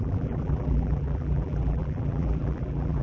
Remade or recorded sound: remade